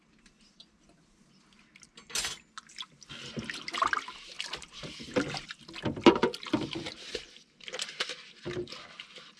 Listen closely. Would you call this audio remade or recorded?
recorded